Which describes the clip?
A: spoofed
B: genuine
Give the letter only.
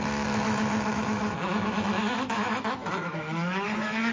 A